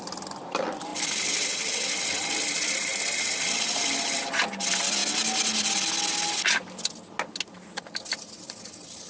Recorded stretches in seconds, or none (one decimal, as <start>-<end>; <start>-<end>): 5.0-8.0